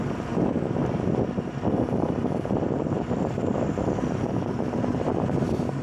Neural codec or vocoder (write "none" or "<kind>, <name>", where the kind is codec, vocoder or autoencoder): vocoder, BigVGAN v2